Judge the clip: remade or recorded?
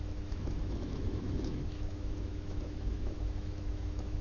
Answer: remade